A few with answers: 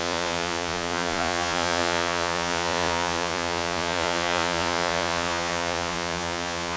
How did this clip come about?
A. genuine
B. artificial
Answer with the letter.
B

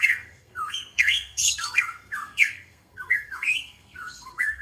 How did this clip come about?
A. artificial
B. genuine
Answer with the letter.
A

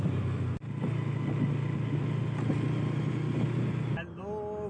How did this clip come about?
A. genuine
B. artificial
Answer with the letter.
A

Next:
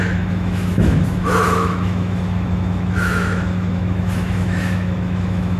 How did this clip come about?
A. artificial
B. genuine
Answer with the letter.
A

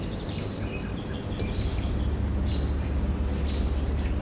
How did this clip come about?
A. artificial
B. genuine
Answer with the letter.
B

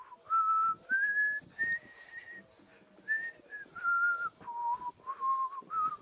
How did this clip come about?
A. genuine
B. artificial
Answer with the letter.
A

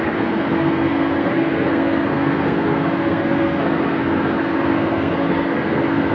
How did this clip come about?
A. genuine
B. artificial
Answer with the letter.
B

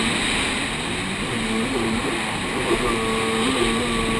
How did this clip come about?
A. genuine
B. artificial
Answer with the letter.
A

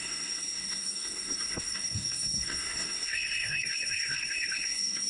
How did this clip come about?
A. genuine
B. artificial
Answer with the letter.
B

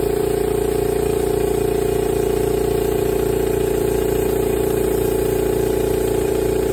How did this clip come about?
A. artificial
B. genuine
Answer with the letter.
A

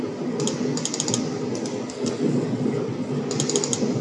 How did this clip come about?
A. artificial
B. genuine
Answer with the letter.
B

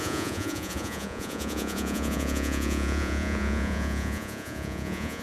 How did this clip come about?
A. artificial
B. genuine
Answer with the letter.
A